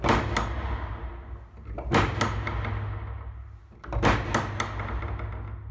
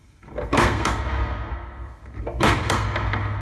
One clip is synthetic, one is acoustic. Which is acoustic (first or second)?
first